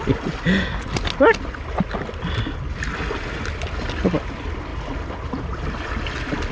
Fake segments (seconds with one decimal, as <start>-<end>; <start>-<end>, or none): none